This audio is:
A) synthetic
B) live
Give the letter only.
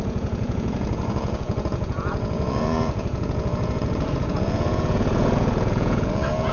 A